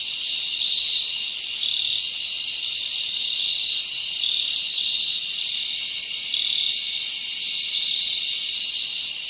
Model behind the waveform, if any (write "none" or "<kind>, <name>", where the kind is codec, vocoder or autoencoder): none